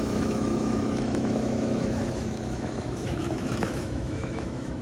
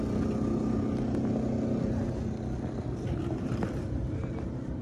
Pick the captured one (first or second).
second